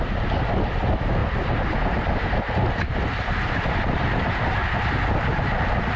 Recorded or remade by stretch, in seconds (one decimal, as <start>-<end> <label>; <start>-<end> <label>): 0.0-6.0 recorded